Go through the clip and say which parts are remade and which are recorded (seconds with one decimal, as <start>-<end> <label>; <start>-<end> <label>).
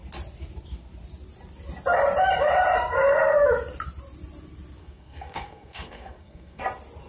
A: 0.0-4.8 recorded; 4.8-6.6 remade; 6.6-7.1 recorded